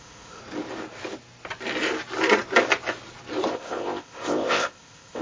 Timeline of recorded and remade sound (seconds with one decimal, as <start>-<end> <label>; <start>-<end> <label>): 0.0-0.4 remade; 0.4-3.5 recorded; 3.5-5.2 remade